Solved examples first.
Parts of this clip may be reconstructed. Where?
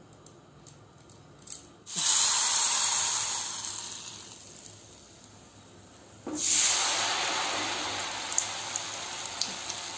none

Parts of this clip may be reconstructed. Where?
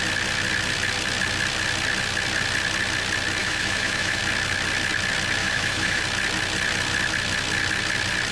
3.4-4.2 (autoencoder, DAC-VAE); 5.4-6.0